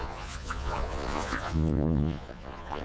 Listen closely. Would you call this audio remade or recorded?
remade